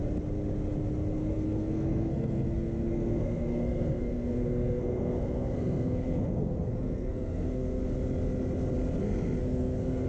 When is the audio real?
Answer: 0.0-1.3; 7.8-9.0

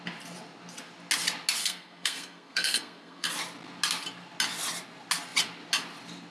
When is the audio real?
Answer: 0.0-1.6; 3.3-6.3

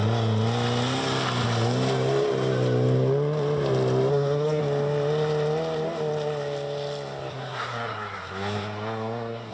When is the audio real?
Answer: 0.0-4.1; 4.6-7.3